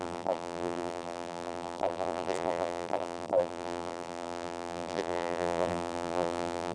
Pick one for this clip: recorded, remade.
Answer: remade